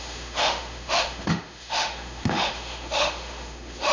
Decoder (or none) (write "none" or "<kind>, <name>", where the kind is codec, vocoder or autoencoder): autoencoder, DAC-VAE